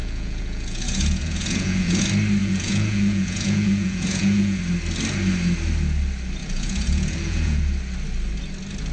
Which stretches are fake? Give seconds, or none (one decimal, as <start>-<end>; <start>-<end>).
0.0-2.0; 2.4-4.6; 6.4-7.6